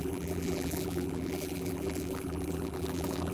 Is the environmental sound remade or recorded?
remade